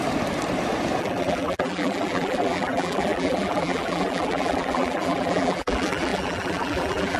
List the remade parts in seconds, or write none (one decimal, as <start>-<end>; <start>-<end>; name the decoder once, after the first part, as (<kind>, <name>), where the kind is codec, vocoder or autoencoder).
1.0-7.2 (vocoder, BigVGAN v2)